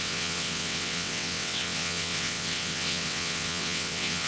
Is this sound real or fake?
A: fake